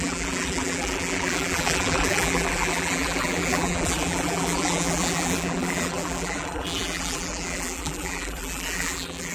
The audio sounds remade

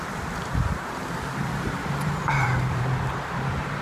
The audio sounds remade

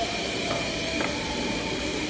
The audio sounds remade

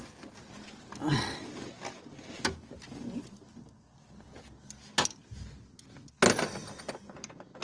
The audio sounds recorded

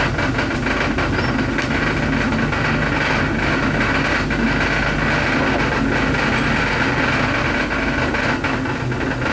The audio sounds recorded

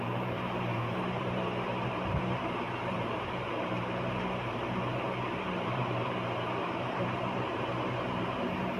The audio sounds remade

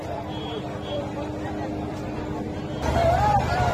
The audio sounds remade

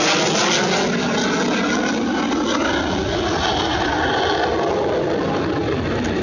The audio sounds recorded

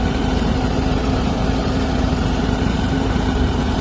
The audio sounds remade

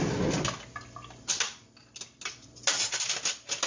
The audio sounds recorded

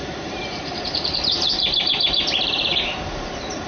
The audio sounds remade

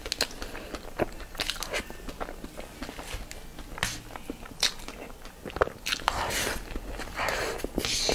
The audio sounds recorded